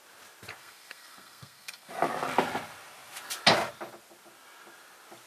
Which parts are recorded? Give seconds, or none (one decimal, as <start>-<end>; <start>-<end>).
0.0-0.6; 1.9-5.3

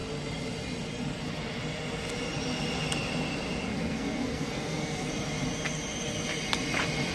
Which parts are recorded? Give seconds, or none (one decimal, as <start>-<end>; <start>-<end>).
0.0-3.7; 5.1-7.1